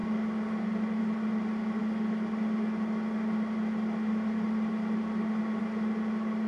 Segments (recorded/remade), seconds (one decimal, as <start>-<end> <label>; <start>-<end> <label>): 0.0-6.5 recorded